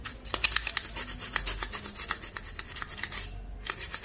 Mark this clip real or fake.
real